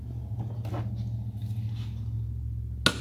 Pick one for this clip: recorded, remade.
recorded